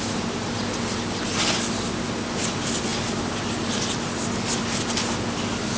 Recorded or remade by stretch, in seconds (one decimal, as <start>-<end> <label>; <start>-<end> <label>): 0.0-5.8 recorded